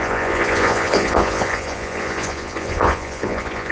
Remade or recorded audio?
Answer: remade